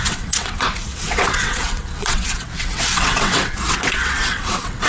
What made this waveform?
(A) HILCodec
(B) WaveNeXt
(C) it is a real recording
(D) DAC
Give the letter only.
B